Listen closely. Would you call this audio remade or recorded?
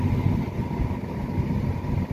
recorded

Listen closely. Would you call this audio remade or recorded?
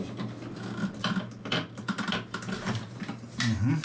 recorded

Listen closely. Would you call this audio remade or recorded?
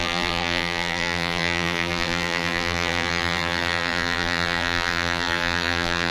remade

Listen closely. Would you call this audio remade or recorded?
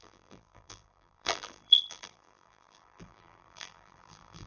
remade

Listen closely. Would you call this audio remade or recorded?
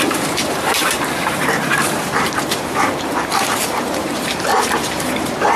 remade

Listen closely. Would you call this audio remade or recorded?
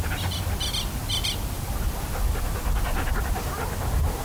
remade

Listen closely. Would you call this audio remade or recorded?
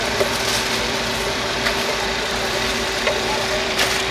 remade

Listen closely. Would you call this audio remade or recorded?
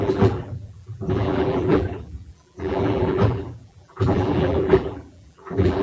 remade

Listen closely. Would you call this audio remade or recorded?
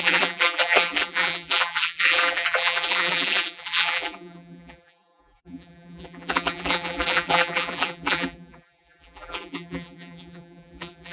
remade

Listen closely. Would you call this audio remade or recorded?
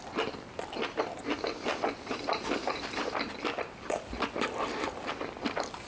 remade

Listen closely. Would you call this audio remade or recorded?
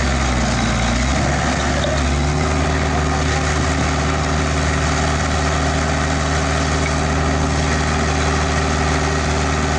recorded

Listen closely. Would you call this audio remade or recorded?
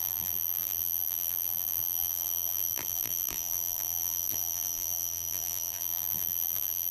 remade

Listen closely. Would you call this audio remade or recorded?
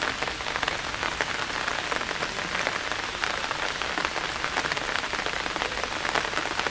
recorded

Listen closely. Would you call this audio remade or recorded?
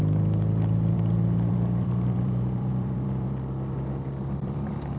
remade